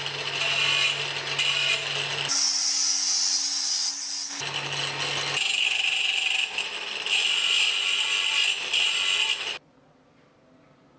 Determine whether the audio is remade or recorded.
recorded